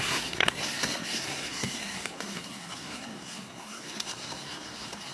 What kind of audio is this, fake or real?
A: fake